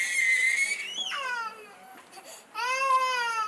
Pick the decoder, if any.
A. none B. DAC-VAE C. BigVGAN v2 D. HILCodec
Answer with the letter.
A